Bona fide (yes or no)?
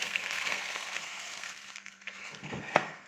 no